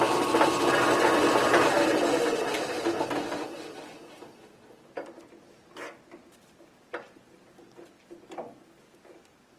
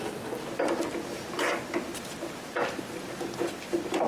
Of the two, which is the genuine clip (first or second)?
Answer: first